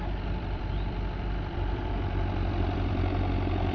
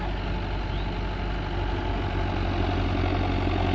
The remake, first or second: first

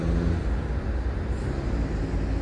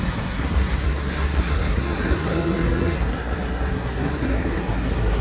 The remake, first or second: second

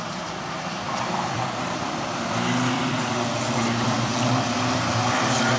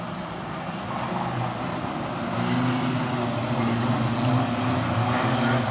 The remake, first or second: first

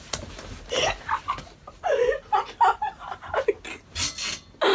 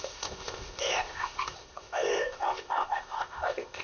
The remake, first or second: second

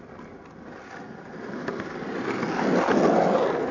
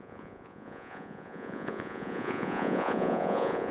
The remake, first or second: second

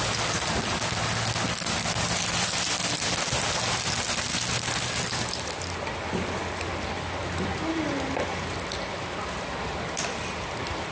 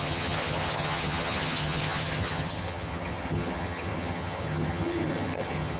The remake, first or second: second